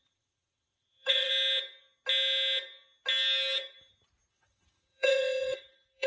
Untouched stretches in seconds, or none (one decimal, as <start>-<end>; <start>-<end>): 1.3-4.3